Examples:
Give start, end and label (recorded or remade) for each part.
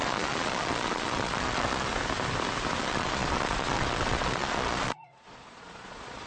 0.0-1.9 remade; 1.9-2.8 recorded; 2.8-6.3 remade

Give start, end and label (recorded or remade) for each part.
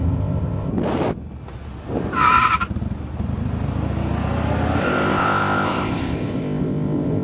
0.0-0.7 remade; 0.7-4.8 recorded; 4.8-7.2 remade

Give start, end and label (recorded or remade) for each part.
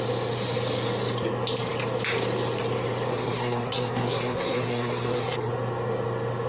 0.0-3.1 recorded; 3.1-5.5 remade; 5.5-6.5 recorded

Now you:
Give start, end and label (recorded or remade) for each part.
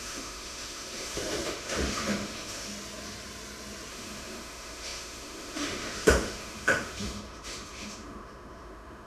0.0-2.7 remade; 2.7-3.9 recorded; 3.9-9.1 remade